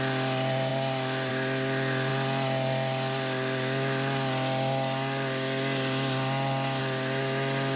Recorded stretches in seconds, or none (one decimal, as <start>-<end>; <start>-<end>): 0.0-7.8